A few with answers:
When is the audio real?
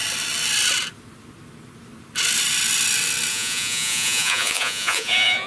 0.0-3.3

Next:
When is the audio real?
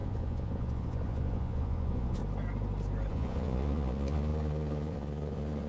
2.2-3.1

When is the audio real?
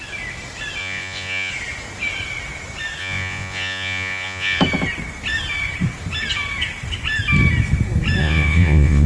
0.0-0.8; 1.5-3.0; 4.6-8.2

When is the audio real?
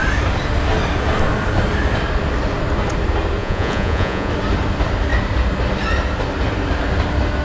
0.0-3.4; 4.3-7.4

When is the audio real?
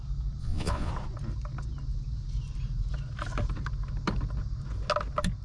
0.0-0.4; 0.9-5.4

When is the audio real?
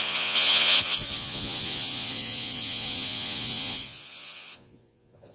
none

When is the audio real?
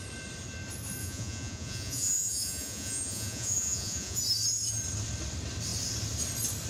0.0-1.0; 4.2-6.7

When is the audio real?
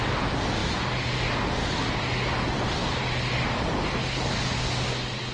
0.0-5.3